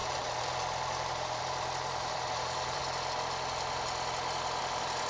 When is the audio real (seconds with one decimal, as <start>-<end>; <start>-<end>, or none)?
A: 2.8-4.6